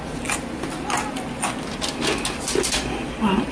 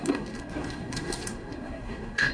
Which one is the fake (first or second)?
second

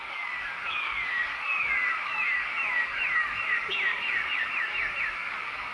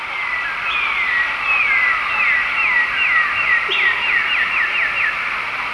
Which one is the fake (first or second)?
first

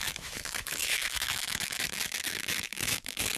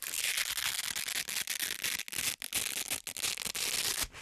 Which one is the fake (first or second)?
first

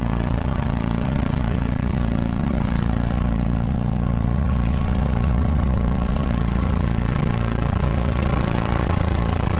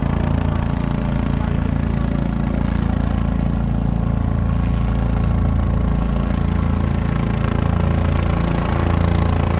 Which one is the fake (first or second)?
first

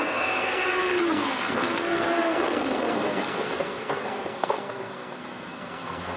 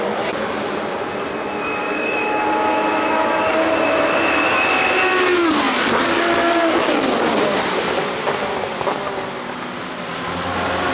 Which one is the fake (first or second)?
first